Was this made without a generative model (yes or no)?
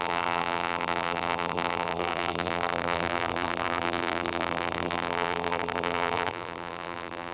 no